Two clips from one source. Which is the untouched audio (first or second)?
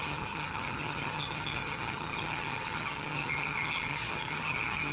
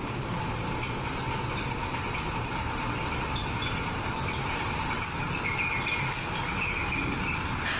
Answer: second